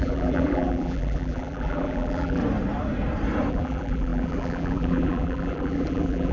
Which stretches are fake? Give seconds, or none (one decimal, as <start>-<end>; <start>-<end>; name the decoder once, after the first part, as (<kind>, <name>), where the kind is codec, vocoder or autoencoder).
0.0-2.4 (vocoder, BigVGAN v2); 3.5-6.3